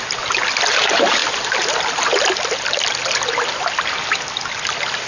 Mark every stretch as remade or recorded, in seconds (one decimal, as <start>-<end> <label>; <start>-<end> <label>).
0.0-5.1 recorded